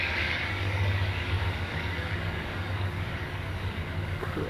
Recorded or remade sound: remade